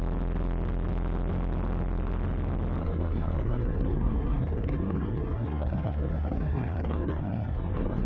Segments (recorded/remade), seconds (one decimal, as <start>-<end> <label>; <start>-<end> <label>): 0.0-2.8 recorded; 2.8-8.1 remade